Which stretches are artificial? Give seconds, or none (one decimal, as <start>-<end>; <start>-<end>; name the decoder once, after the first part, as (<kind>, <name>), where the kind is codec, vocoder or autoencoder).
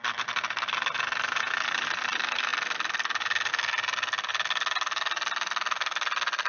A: none